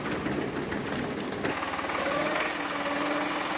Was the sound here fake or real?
real